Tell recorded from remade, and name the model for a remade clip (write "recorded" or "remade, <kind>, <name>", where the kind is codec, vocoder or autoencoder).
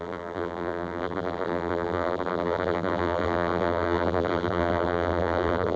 remade, vocoder, BigVGAN v2